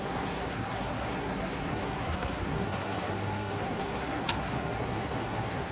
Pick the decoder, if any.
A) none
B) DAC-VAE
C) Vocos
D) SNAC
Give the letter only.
D